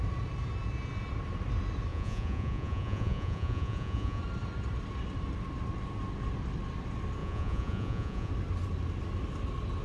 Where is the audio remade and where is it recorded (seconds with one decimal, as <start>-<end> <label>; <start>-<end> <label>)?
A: 0.0-1.9 recorded; 1.9-4.2 remade; 4.2-7.2 recorded; 7.2-8.3 remade; 8.3-9.8 recorded